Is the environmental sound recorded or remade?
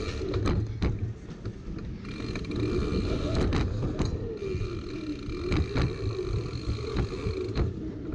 recorded